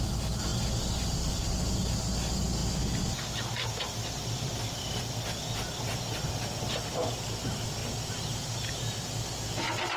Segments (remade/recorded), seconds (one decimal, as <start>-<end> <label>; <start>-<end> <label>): 0.0-10.0 recorded